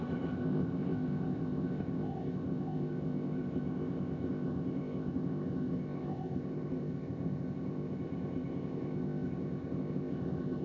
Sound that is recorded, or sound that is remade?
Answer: remade